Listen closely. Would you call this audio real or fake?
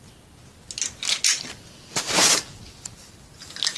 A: real